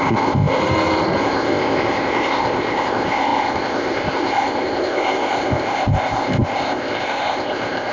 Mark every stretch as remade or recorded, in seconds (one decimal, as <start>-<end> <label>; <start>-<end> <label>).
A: 0.0-0.6 remade; 0.6-1.2 recorded; 1.2-7.9 remade